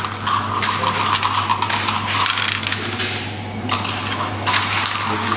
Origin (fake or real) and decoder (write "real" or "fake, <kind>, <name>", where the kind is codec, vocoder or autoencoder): real